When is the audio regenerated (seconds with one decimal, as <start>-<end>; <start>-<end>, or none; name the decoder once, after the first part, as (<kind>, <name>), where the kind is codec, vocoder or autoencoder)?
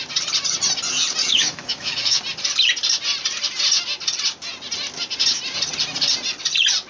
1.2-2.2 (autoencoder, DAC-VAE)